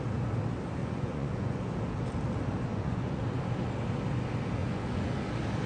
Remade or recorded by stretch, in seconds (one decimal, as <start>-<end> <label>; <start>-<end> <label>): 0.0-0.8 recorded; 0.8-1.7 remade; 1.7-2.7 recorded; 2.7-3.2 remade; 3.2-4.6 recorded; 4.6-5.3 remade; 5.3-5.7 recorded